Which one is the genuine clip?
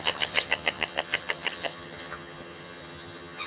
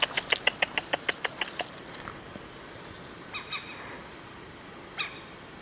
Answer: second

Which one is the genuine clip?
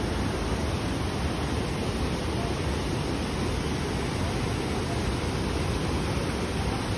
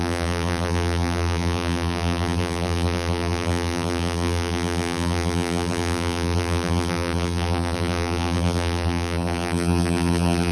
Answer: first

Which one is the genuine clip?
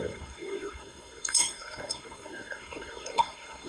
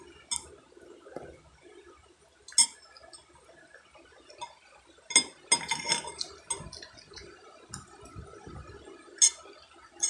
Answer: second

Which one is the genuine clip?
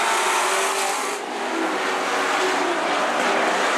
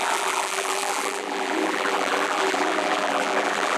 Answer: first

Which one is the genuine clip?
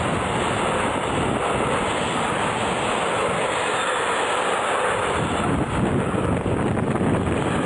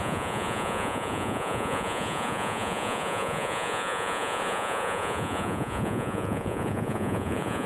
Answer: first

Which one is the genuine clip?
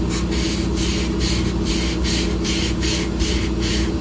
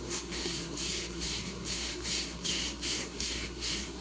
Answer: first